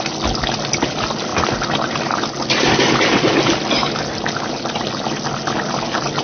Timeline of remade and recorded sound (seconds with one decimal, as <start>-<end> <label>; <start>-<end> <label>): 0.0-6.2 recorded